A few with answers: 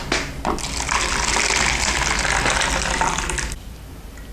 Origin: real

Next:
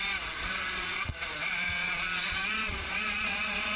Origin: fake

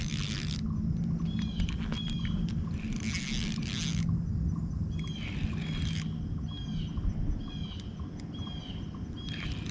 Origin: real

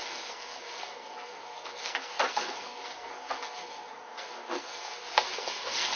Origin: fake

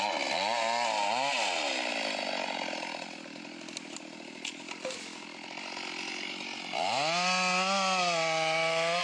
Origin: real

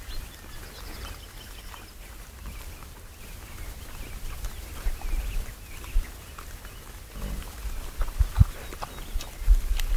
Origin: real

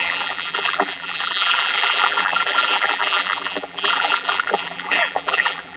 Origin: fake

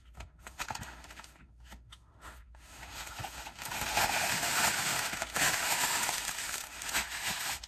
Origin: fake